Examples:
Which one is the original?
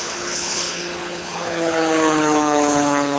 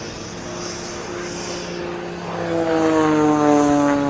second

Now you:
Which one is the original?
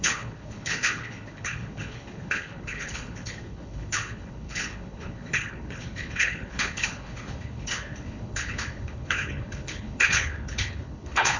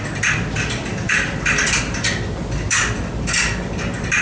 second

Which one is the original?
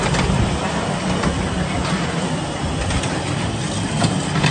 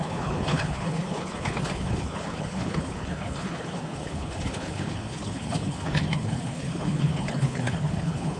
first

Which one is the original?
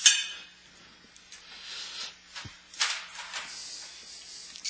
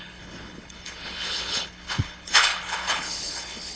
first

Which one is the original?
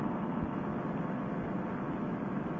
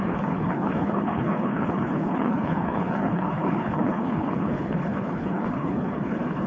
first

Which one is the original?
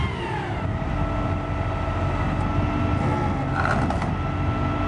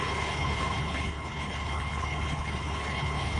first